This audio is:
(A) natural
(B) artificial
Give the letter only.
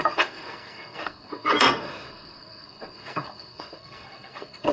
B